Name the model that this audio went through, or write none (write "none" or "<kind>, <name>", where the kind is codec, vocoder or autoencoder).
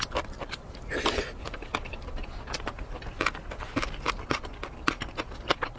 none